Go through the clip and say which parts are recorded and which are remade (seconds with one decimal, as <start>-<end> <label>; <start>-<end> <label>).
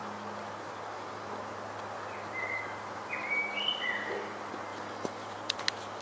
0.0-6.0 recorded